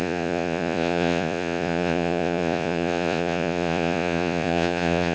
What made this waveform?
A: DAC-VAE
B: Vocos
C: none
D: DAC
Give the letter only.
B